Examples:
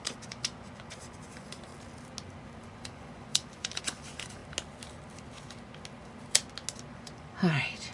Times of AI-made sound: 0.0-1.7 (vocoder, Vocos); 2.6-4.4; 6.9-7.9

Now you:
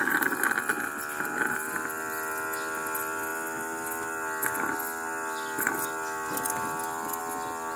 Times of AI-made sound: none

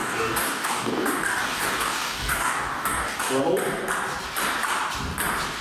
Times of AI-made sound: 0.0-3.4 (codec, DAC)

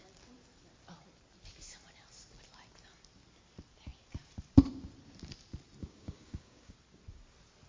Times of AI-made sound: 5.8-6.7 (codec, DAC)

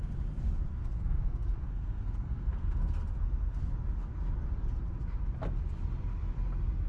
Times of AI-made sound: 0.7-3.7 (codec, SNAC)